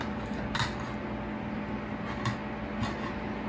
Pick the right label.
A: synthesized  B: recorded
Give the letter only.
B